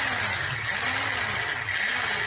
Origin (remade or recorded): recorded